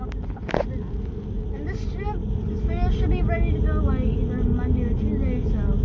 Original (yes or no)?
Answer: yes